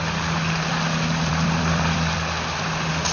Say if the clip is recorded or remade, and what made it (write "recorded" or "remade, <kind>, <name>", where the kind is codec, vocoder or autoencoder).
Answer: remade, vocoder, BigVGAN v2